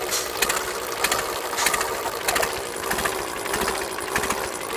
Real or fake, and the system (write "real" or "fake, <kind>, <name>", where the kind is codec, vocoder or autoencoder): real